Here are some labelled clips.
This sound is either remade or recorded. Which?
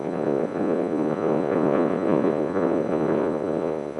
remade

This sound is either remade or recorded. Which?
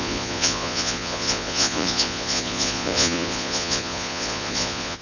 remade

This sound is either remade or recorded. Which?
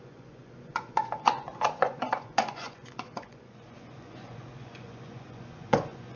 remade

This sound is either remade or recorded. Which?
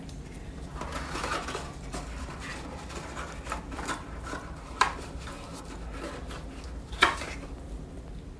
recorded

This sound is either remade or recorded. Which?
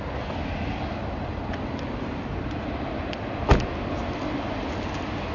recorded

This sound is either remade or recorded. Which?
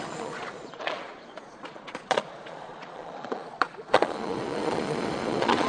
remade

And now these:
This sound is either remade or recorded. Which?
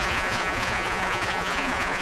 remade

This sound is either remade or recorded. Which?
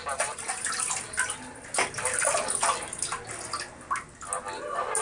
recorded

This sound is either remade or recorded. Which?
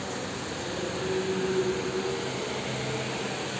recorded